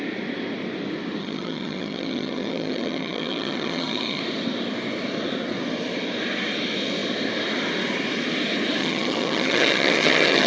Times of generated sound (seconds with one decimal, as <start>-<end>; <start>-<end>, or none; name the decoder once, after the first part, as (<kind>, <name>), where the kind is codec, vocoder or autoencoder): 1.2-4.2 (vocoder, HiFi-GAN); 8.8-10.5